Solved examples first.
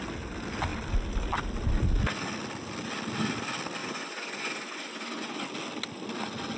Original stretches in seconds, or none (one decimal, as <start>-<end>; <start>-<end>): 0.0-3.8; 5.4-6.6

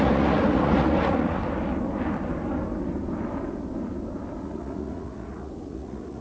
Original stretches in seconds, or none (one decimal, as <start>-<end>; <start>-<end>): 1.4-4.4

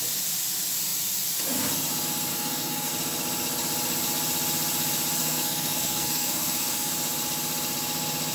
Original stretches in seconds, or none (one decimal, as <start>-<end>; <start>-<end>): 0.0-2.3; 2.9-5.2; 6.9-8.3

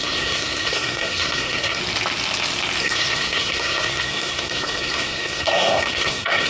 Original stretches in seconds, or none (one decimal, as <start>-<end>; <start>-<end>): 1.8-2.8

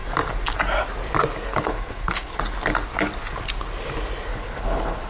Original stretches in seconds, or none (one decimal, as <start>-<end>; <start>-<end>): 0.0-1.5; 2.4-4.3

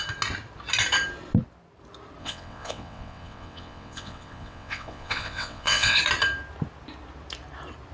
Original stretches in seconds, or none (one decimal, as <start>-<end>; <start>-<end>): 0.0-2.2; 6.0-7.9

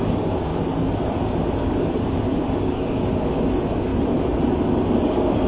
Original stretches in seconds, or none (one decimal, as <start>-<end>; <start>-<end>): 0.5-1.6; 3.9-5.0